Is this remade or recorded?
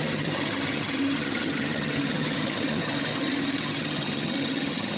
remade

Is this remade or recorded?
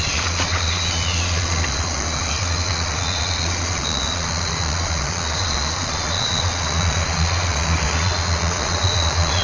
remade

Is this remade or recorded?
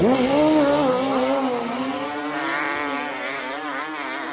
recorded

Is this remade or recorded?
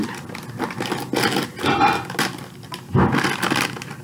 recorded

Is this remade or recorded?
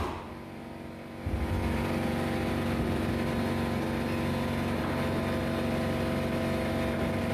recorded